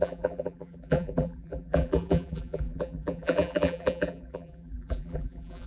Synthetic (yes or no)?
yes